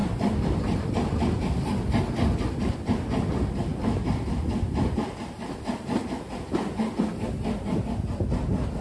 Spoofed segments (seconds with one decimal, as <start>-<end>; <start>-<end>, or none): none